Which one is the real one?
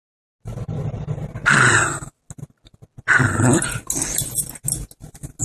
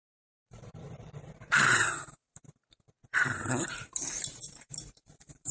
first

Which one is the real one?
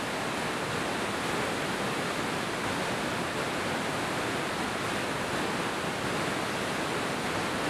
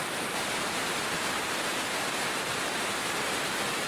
first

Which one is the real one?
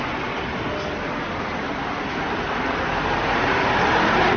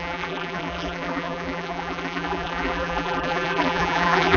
first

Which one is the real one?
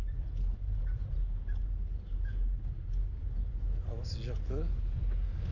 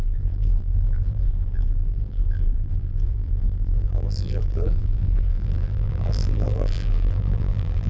first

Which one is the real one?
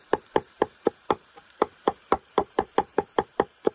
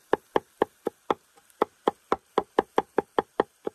second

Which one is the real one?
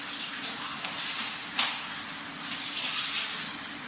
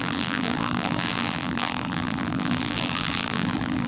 first